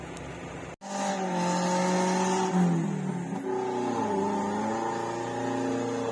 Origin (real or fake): real